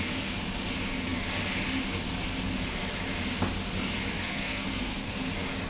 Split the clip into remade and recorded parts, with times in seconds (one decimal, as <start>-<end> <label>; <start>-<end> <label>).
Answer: 0.0-4.1 recorded; 4.1-5.3 remade; 5.3-5.7 recorded